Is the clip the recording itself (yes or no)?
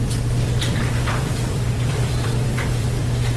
no